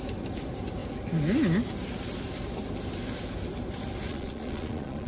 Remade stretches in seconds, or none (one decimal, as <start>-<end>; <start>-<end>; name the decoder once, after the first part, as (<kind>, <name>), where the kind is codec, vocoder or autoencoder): 4.1-5.1 (vocoder, Vocos)